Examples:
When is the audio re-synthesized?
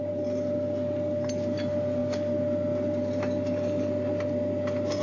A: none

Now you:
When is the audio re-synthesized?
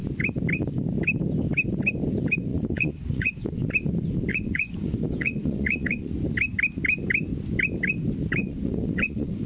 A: 2.5-3.7 (vocoder, Vocos); 4.3-6.1; 8.4-9.5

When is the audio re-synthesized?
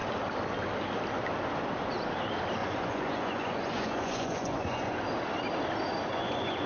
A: 2.6-5.0 (vocoder, Vocos); 6.1-6.7